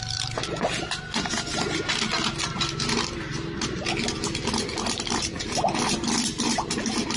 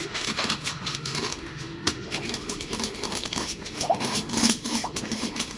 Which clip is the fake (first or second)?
second